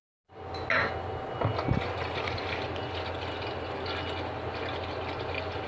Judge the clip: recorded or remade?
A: recorded